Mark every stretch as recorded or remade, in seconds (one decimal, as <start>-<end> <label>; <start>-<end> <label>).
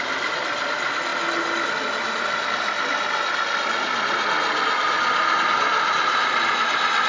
0.0-1.1 remade; 1.1-5.4 recorded; 5.4-7.1 remade